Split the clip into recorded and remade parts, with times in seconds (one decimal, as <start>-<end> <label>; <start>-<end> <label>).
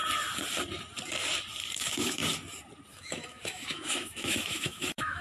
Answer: 0.0-1.8 recorded; 1.8-2.2 remade; 2.2-2.9 recorded; 2.9-5.2 remade